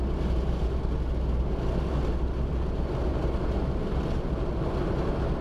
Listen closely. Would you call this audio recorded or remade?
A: recorded